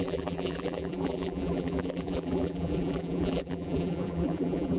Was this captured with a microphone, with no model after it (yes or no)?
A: no